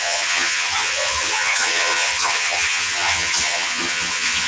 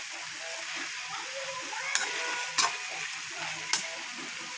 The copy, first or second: first